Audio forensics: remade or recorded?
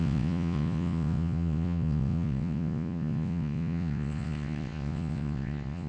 remade